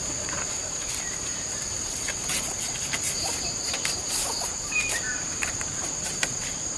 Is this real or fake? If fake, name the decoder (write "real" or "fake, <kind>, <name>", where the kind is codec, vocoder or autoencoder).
fake, vocoder, BigVGAN v2